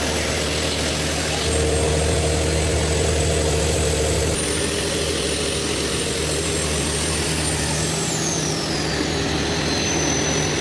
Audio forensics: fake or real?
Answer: real